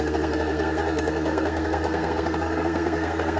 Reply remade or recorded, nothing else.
remade